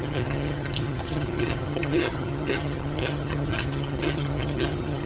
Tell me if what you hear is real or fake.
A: fake